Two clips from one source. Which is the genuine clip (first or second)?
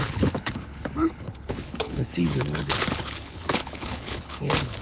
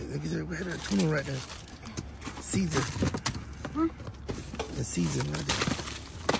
second